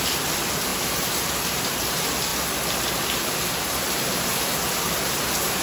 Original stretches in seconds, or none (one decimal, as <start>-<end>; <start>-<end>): 2.3-2.9